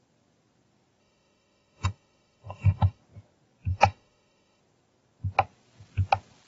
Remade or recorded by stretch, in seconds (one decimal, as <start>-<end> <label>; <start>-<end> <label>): 0.0-1.0 recorded; 1.0-3.0 remade; 3.0-3.7 recorded; 3.7-4.6 remade; 4.6-6.5 recorded